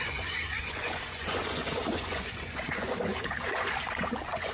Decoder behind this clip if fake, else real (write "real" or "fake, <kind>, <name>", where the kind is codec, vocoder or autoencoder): fake, vocoder, Vocos